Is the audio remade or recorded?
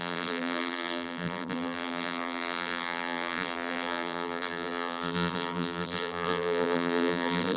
remade